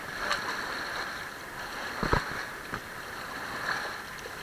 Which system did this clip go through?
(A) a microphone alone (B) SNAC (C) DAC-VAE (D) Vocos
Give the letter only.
A